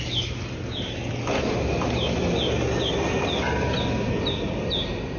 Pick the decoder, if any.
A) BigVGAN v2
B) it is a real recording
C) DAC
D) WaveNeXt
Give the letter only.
B